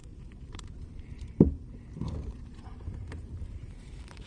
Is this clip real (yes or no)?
no